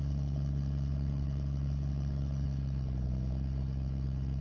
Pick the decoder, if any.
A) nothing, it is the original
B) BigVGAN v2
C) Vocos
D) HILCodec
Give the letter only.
D